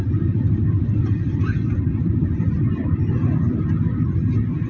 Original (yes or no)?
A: yes